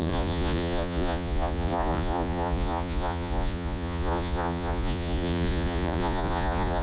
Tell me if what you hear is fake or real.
fake